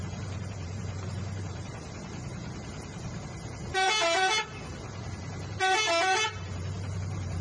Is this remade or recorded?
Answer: remade